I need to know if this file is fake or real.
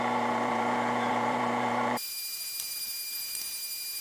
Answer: fake